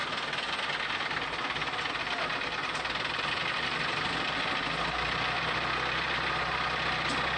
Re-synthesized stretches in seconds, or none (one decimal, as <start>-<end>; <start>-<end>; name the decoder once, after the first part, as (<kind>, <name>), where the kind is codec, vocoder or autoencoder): none